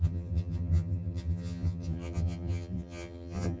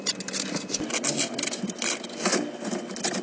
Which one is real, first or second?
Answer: second